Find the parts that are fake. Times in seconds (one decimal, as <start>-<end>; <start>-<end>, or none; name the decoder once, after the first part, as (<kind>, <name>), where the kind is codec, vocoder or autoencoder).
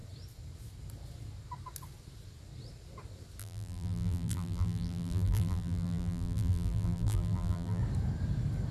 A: 3.4-7.8 (vocoder, BigVGAN v2)